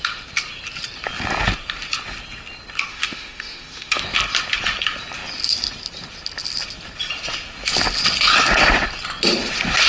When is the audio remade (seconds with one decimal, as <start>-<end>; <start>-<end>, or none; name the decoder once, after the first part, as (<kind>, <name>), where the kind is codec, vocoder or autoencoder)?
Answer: 2.9-4.0 (autoencoder, DAC-VAE)